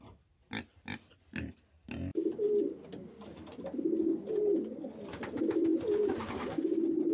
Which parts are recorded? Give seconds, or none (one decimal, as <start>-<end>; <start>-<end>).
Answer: 0.0-7.1